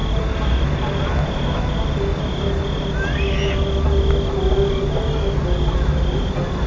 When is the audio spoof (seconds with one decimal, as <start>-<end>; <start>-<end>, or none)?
none